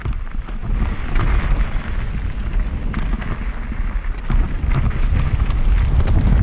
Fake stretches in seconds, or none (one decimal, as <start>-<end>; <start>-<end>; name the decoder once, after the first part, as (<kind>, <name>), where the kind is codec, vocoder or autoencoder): 4.9-5.5 (vocoder, BigVGAN v2)